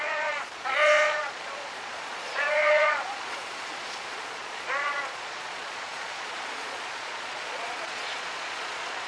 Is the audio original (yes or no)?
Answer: no